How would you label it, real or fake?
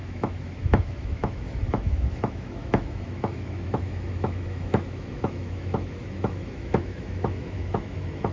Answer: fake